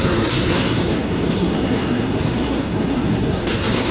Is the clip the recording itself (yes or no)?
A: no